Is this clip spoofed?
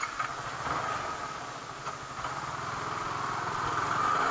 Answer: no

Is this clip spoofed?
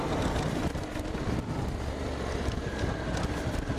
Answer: no